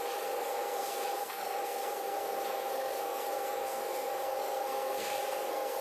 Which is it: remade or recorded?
remade